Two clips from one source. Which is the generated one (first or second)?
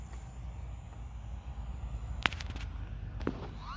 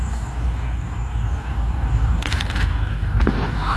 second